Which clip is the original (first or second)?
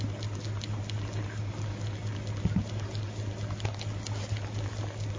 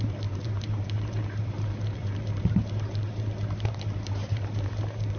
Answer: first